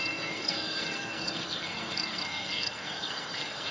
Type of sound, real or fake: fake